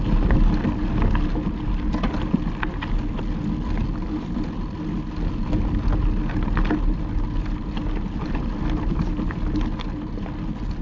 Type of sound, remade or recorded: recorded